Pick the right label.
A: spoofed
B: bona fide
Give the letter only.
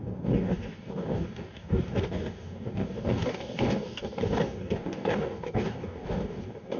A